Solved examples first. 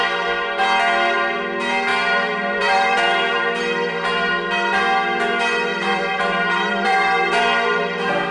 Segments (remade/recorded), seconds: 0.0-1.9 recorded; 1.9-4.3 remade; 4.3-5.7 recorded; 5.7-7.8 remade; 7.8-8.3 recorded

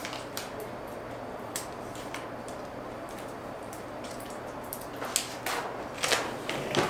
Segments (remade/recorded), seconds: 0.0-4.1 remade; 4.1-6.9 recorded

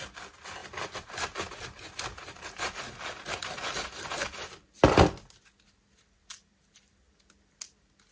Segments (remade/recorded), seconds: 0.0-8.1 recorded